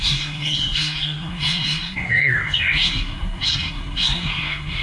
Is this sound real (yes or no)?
no